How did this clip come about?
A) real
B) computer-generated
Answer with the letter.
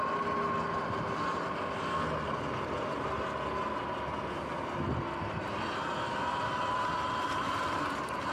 A